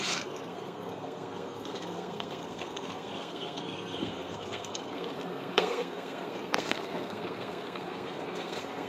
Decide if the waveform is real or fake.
fake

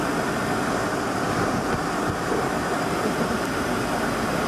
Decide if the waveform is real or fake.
real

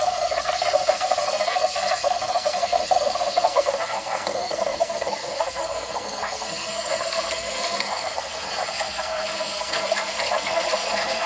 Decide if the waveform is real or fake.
fake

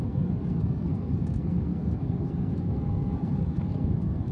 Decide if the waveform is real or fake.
fake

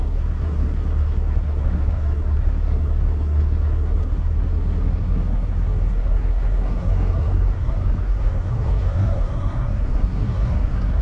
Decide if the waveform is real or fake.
fake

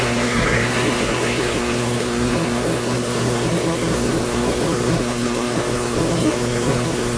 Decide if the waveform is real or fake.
fake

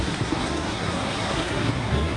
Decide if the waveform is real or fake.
fake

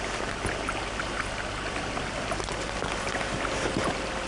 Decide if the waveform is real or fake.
real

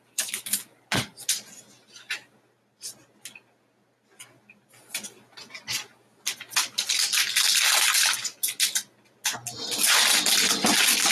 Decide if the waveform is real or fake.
real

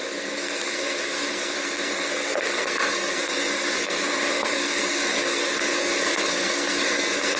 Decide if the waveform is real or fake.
fake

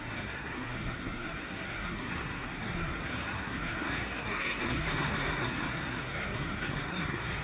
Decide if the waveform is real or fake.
fake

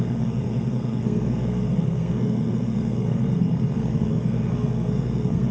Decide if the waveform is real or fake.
fake